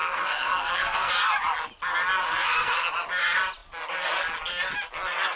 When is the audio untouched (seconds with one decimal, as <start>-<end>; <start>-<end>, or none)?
1.1-2.3; 2.9-5.4